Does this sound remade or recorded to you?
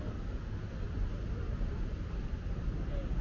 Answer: recorded